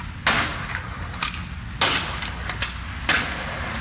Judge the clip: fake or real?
real